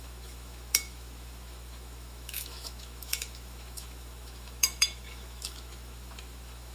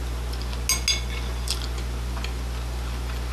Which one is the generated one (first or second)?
first